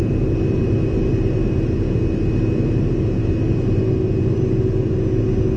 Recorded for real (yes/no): yes